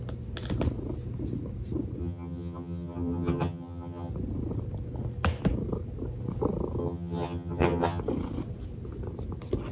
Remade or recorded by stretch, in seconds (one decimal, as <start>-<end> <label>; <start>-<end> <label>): 0.0-2.0 recorded; 2.0-4.1 remade; 4.1-6.8 recorded; 6.8-8.0 remade; 8.0-9.7 recorded